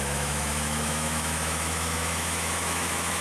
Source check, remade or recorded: remade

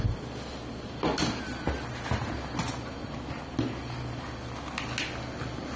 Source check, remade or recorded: recorded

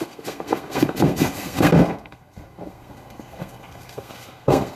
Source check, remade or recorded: remade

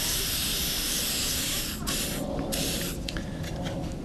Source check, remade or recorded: recorded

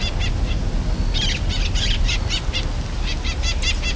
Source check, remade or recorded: recorded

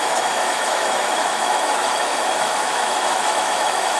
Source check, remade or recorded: remade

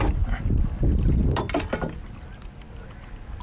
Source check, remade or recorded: recorded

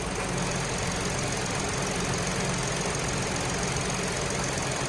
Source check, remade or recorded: recorded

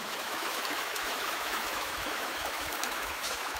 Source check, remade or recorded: remade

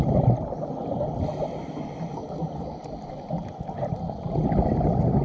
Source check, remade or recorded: recorded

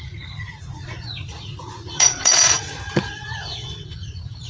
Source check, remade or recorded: remade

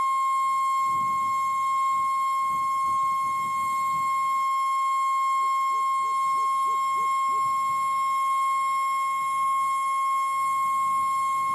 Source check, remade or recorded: remade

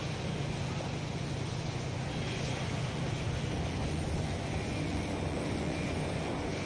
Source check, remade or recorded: remade